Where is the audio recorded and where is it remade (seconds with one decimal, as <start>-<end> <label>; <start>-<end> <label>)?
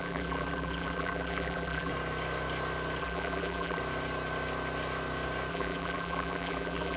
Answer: 0.0-1.9 remade; 1.9-3.0 recorded; 3.0-3.8 remade; 3.8-5.5 recorded; 5.5-7.0 remade